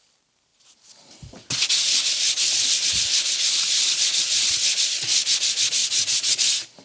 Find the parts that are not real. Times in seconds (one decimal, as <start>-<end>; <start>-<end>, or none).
5.8-6.3